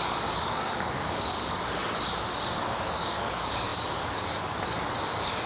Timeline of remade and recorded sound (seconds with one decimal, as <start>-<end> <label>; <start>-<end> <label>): 0.0-1.8 remade; 1.8-3.1 recorded; 3.1-5.5 remade